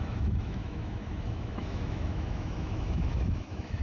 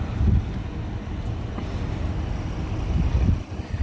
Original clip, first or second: second